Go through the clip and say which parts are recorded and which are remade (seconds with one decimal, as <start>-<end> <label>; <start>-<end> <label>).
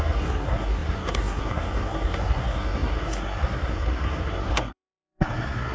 0.0-5.7 remade